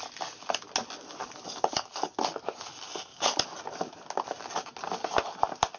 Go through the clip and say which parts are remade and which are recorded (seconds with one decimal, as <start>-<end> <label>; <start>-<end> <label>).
0.0-1.2 recorded; 1.2-2.6 remade; 2.6-3.1 recorded; 3.1-3.6 remade; 3.6-5.8 recorded